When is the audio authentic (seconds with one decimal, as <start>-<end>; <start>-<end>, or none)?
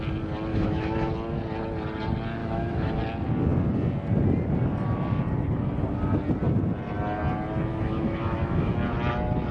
0.0-0.5; 1.1-2.4; 3.0-7.7; 8.7-9.5